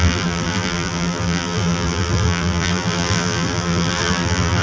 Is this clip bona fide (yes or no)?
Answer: no